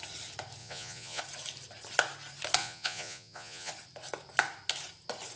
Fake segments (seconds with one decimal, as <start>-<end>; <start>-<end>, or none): 0.6-1.2; 2.6-3.7